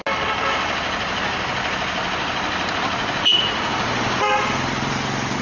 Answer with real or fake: real